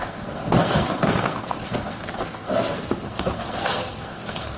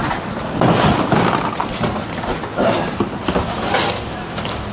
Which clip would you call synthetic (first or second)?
first